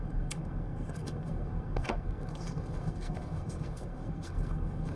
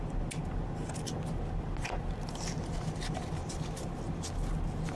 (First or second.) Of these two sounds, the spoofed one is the first